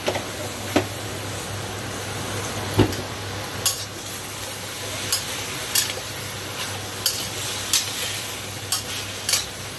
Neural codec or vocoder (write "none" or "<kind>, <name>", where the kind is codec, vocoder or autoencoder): none